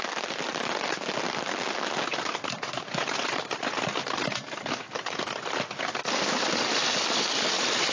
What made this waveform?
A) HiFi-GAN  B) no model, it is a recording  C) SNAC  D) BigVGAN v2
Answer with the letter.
B